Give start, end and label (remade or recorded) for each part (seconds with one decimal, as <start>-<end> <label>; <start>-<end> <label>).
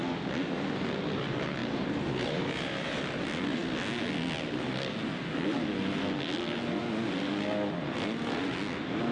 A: 0.0-1.6 recorded; 1.6-3.0 remade; 3.0-9.1 recorded